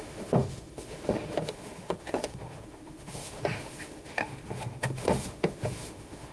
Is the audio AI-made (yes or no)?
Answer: yes